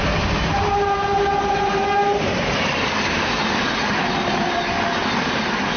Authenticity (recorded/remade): recorded